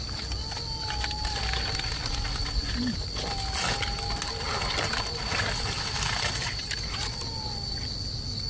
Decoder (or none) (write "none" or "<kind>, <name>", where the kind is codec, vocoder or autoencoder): none